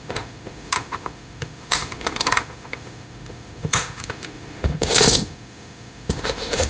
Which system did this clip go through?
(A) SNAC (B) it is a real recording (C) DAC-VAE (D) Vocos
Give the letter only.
C